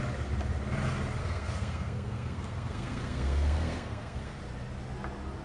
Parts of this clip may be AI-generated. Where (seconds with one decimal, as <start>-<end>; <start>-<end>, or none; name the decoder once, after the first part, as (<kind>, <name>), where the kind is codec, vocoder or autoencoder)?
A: 1.2-4.4 (codec, SNAC)